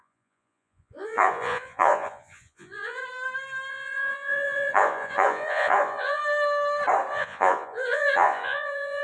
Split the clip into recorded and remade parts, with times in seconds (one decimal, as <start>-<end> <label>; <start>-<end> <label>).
0.0-3.0 remade; 3.0-3.7 recorded; 3.7-6.2 remade; 6.2-7.1 recorded; 7.1-9.0 remade